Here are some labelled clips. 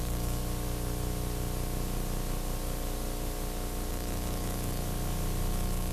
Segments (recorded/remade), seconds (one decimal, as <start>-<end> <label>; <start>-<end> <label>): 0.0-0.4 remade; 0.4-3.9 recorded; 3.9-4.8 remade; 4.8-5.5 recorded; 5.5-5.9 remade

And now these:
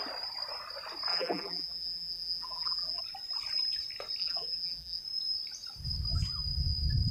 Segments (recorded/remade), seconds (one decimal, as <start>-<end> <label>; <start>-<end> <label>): 0.0-1.1 recorded; 1.1-3.0 remade; 3.0-4.2 recorded; 4.2-5.0 remade; 5.0-7.1 recorded

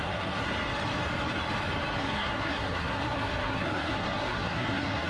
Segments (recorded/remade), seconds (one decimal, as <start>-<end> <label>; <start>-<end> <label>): 0.0-0.5 remade; 0.5-2.0 recorded; 2.0-5.1 remade

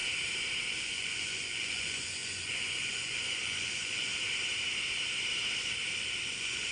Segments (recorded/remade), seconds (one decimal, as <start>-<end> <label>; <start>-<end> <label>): 0.0-0.7 recorded; 0.7-4.1 remade; 4.1-6.3 recorded; 6.3-6.7 remade

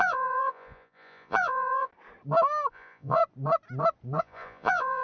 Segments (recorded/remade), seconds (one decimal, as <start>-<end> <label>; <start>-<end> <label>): 0.0-1.9 remade; 1.9-2.7 recorded; 2.7-3.2 remade; 3.2-4.2 recorded; 4.2-5.0 remade

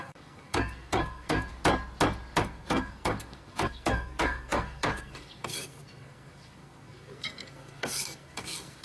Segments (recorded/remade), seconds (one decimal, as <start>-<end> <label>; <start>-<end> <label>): 0.0-1.5 remade; 1.5-2.4 recorded; 2.4-8.8 remade

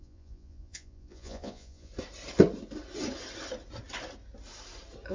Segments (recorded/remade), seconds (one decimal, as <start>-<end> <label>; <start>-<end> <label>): 0.0-1.9 remade; 1.9-5.1 recorded